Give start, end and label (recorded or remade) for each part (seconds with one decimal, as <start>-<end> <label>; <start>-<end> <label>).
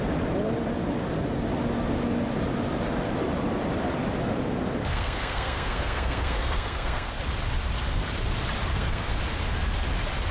0.0-4.8 recorded; 4.8-7.2 remade; 7.2-8.7 recorded; 8.7-9.2 remade; 9.2-10.3 recorded